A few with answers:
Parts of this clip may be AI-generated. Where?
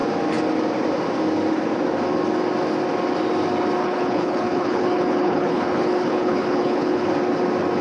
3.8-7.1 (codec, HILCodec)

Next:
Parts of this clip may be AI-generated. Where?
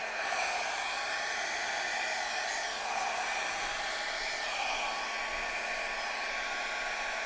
none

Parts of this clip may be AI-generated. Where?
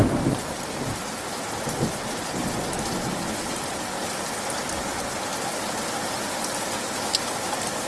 none